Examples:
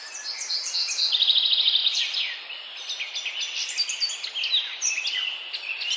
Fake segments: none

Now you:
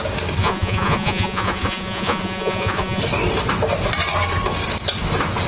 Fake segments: 0.4-3.0

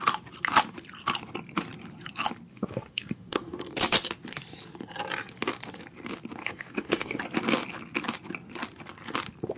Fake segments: 2.5-3.6; 6.4-7.2

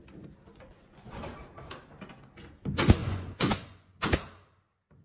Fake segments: 0.5-1.2; 3.0-3.9

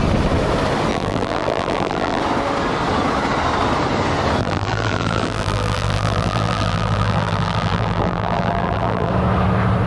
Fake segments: 0.9-2.2; 4.4-9.1

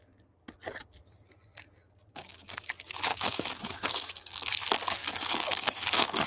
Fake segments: 2.1-2.7; 3.1-4.5; 5.0-6.3